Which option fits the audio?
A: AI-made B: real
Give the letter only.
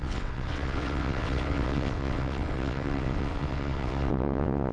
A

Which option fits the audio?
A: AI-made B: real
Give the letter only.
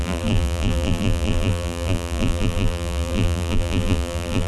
A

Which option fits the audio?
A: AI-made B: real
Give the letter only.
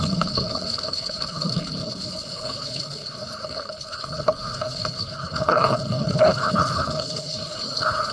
A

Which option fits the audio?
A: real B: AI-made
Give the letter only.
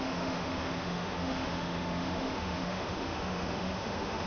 B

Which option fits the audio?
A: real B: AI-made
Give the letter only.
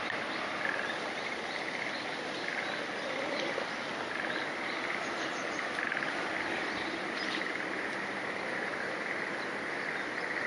A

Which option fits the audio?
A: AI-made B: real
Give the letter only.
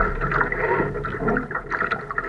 B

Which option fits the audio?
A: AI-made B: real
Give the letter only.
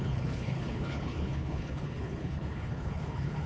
A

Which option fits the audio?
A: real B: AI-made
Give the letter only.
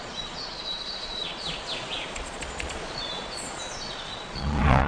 B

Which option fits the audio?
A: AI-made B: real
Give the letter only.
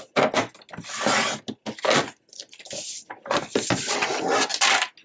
B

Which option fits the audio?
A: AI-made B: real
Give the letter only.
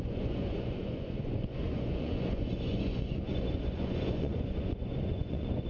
A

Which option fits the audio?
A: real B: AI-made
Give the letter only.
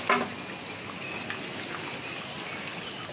A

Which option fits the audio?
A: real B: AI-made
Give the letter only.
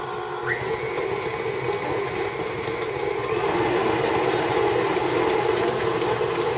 A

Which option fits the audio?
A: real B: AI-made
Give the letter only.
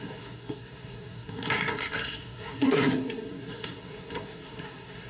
B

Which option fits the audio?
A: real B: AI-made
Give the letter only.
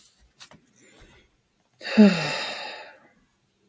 A